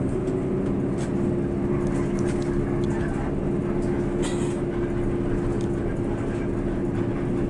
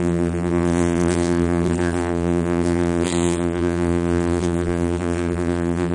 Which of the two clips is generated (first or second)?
second